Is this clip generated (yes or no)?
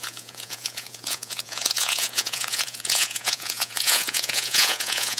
yes